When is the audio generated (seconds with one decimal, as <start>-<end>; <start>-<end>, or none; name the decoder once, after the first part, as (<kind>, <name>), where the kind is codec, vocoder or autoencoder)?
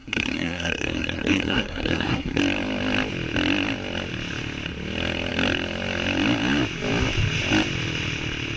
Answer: 0.0-2.4 (codec, SNAC)